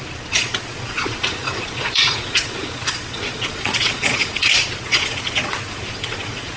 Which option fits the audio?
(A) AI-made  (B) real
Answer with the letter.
A